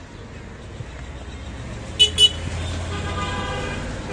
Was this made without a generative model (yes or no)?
yes